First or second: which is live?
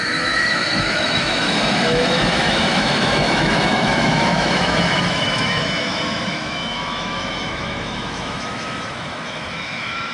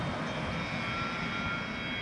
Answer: second